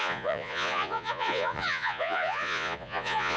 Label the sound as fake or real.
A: fake